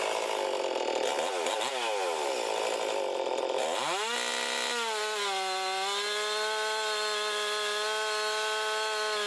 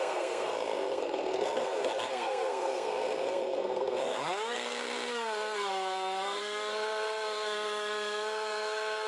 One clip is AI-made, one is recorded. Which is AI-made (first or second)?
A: second